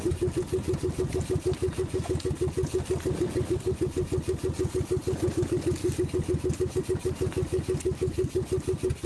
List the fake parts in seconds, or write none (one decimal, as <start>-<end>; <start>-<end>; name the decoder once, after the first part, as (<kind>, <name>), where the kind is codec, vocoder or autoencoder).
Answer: none